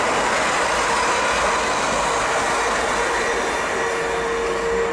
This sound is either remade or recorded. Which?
recorded